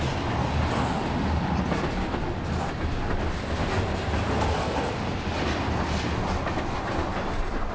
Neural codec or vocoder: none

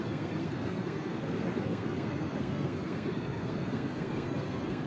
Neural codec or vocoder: codec, SNAC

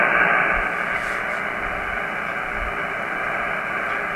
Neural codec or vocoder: none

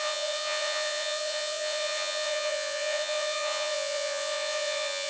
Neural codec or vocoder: vocoder, Vocos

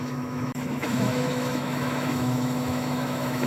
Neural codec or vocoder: autoencoder, DAC-VAE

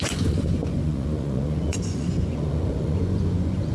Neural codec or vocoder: vocoder, Vocos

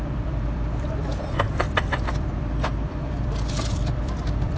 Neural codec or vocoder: vocoder, BigVGAN v2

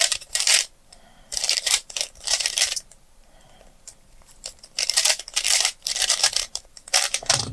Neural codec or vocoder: vocoder, BigVGAN v2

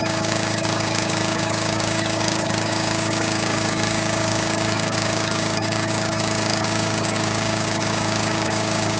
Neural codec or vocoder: codec, DAC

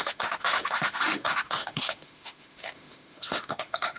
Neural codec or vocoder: autoencoder, DAC-VAE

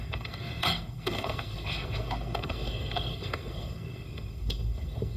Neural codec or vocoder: codec, SNAC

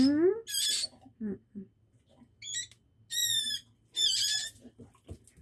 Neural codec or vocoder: none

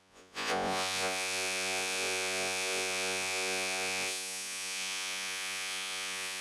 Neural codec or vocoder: vocoder, Vocos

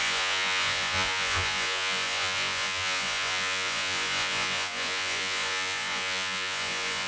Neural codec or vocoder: vocoder, Vocos